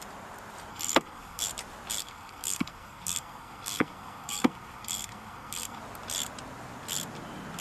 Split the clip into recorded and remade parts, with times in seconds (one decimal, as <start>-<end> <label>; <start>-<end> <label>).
0.0-0.7 recorded; 0.7-1.4 remade; 1.4-2.0 recorded; 2.0-5.8 remade; 5.8-7.6 recorded